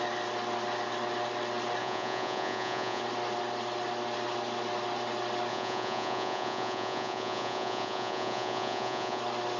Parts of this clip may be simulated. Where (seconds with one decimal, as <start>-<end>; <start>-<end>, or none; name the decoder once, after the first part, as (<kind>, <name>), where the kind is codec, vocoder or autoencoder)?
1.8-3.0 (vocoder, Vocos); 5.5-9.2